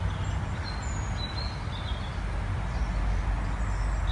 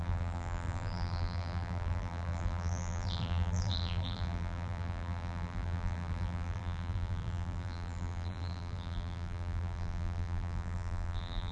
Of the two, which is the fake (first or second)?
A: second